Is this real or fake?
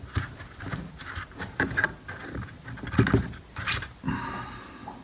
real